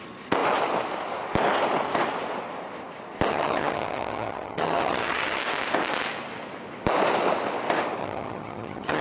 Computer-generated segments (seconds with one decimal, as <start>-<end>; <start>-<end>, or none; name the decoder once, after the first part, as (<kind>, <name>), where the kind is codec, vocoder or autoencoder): 3.3-5.4 (vocoder, HiFi-GAN); 8.0-9.0

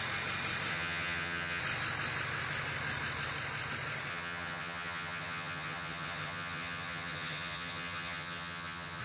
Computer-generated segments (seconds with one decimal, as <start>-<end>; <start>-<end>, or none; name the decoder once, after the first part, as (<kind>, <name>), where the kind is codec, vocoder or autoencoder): 0.7-1.6 (vocoder, HiFi-GAN); 4.1-9.0

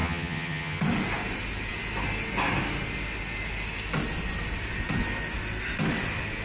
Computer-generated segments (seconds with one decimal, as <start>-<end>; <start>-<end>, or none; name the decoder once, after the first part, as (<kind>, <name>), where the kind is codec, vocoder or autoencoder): 0.0-0.8 (vocoder, HiFi-GAN)